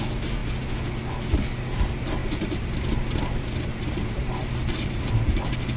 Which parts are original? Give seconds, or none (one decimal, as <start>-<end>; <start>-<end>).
0.0-2.2; 4.9-5.8